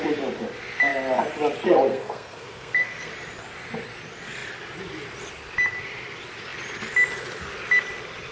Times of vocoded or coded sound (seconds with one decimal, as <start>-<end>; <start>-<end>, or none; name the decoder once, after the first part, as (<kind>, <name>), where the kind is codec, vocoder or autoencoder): 1.9-3.1 (codec, SNAC)